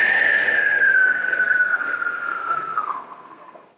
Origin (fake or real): fake